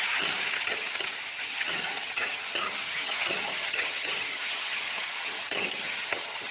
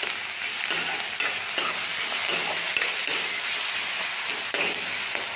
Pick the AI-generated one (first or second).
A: first